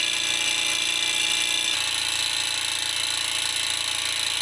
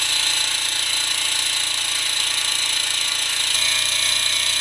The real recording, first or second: first